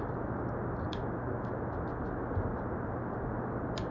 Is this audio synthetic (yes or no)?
no